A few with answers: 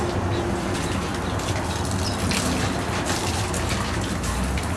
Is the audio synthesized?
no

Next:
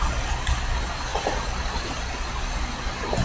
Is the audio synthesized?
no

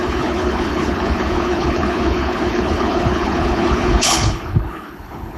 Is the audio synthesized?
yes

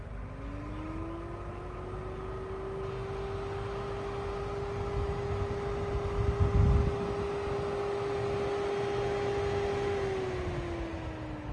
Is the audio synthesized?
no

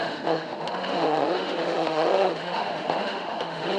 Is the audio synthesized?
yes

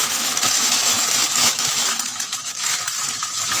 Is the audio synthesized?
yes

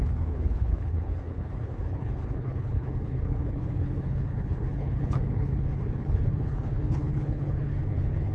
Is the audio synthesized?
yes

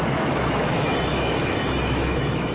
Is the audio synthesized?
yes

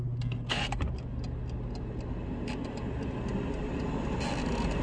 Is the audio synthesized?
no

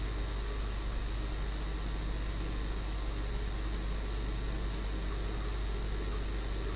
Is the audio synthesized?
no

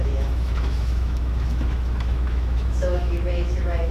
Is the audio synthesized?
yes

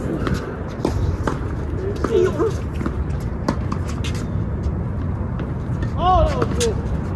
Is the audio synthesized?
no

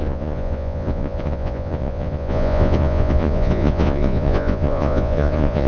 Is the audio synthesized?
yes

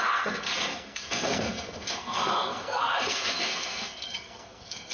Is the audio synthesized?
yes